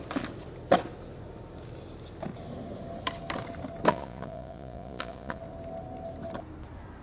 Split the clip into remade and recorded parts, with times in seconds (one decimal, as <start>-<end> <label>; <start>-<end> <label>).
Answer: 0.0-3.9 recorded; 3.9-5.4 remade; 5.4-7.0 recorded